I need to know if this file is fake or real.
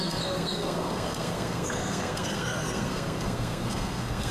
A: fake